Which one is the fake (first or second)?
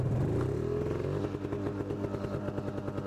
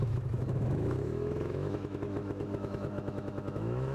second